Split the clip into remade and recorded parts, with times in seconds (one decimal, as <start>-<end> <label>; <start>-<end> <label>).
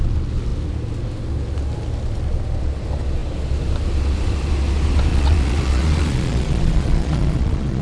0.0-5.1 recorded; 5.1-7.8 remade